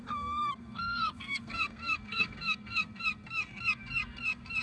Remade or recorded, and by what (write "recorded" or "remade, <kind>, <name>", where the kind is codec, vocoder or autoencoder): remade, codec, SNAC